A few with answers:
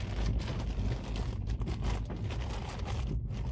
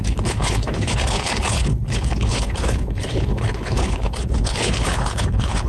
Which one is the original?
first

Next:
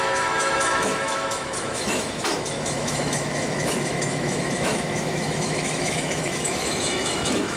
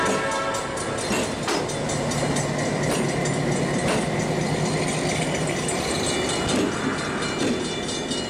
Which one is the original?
second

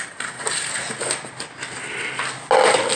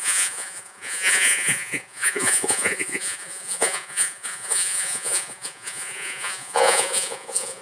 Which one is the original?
first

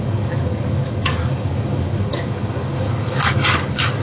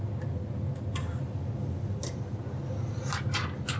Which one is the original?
second